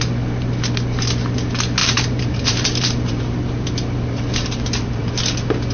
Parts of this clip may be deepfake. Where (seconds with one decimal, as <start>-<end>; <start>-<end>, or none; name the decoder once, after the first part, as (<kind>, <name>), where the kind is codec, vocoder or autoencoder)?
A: 1.8-5.1 (vocoder, BigVGAN v2)

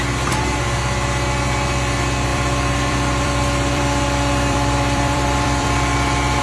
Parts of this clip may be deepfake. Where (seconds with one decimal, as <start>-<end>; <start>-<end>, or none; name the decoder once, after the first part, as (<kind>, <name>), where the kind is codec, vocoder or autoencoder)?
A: 2.3-6.4 (vocoder, BigVGAN v2)